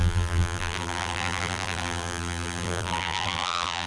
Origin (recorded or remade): remade